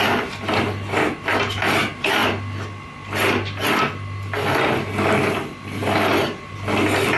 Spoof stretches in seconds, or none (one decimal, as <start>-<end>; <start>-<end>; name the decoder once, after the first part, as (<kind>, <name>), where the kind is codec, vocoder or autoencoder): none

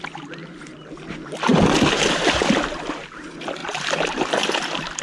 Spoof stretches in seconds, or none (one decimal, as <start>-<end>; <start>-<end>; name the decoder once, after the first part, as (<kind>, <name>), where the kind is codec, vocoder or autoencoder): 3.6-4.3 (vocoder, BigVGAN v2)